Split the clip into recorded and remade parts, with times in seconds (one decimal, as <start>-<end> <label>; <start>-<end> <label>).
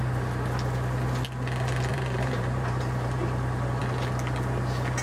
0.0-1.9 recorded; 1.9-3.8 remade; 3.8-5.0 recorded